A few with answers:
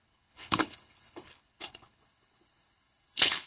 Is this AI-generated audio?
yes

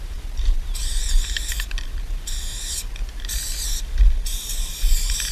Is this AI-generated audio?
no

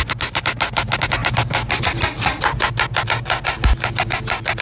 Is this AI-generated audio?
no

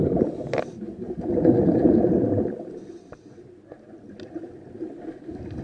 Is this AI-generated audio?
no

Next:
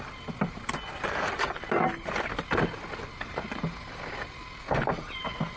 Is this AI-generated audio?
no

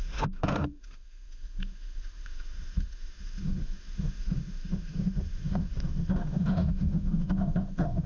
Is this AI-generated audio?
yes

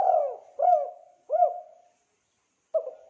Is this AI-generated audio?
no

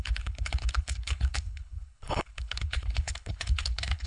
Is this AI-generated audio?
yes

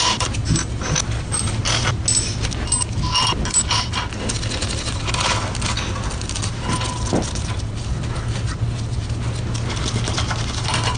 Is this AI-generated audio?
no